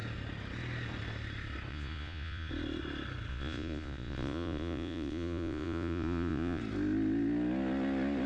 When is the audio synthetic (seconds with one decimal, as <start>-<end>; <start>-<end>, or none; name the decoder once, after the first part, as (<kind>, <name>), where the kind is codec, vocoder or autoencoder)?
1.7-2.5 (vocoder, Vocos); 3.3-6.6